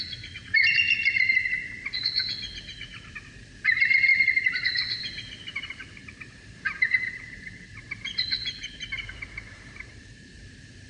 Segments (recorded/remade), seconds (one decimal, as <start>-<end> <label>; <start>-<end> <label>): 0.0-4.1 recorded; 4.1-5.2 remade; 5.2-6.0 recorded; 6.0-10.3 remade; 10.3-10.9 recorded